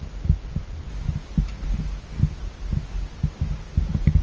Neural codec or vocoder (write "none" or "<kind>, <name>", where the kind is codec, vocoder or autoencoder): none